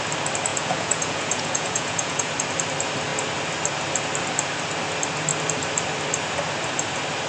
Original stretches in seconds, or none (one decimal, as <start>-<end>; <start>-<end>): 0.0-0.5; 2.3-7.3